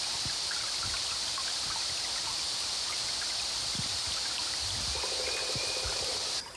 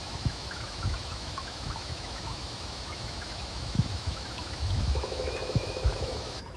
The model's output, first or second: second